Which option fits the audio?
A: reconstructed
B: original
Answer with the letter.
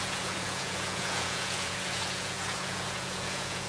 A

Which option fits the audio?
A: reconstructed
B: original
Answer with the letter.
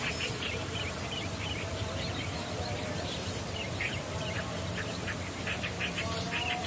A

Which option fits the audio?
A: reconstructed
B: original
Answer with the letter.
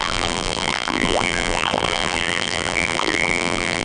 A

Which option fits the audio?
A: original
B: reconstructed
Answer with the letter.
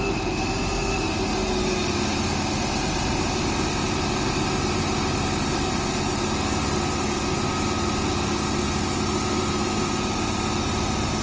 A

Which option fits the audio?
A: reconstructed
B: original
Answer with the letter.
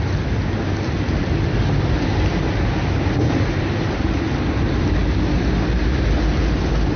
B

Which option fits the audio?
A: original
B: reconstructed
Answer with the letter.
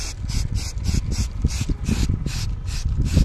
A